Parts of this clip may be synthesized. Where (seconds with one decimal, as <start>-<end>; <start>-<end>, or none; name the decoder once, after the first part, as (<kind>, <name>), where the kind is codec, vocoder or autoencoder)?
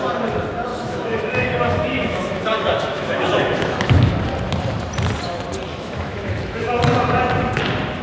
0.7-4.1 (autoencoder, DAC-VAE); 5.7-6.8